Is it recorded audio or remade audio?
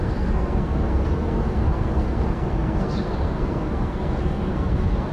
remade